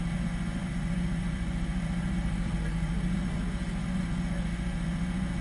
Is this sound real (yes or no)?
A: no